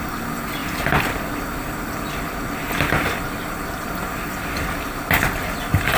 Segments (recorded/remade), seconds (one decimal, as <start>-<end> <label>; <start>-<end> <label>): 0.0-6.0 recorded